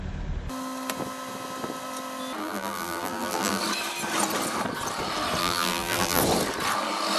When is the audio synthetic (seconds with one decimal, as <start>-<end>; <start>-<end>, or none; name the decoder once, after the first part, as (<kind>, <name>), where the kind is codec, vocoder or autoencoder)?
2.4-3.6 (vocoder, BigVGAN v2); 5.4-6.2